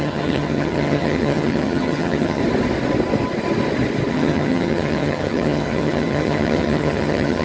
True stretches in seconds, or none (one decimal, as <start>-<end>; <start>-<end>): 2.4-4.1